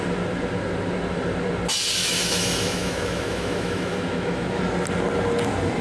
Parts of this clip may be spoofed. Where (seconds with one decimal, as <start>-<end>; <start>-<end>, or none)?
2.0-4.6